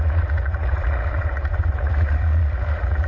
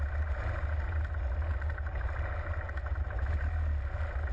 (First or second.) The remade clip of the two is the first